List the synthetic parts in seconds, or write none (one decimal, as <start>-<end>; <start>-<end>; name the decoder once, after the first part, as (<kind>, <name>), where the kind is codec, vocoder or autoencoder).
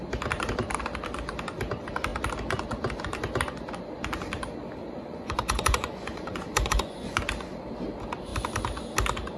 4.8-7.2 (vocoder, Vocos)